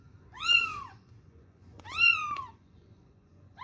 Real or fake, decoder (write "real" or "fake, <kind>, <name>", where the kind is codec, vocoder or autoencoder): fake, vocoder, Vocos